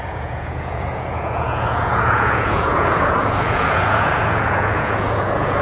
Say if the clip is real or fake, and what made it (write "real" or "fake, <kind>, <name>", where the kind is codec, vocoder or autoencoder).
fake, vocoder, Vocos